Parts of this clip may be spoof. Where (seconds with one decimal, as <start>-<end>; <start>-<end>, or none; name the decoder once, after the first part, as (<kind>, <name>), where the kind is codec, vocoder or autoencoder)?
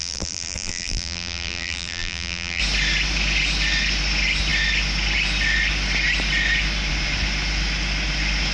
0.0-2.6 (vocoder, BigVGAN v2)